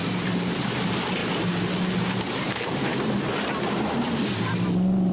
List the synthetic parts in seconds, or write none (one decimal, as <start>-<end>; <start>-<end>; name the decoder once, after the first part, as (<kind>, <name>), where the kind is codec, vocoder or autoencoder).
0.0-1.2 (vocoder, BigVGAN v2); 2.0-5.1